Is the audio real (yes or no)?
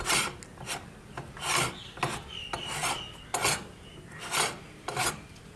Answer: yes